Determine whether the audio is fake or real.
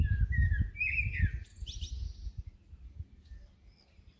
real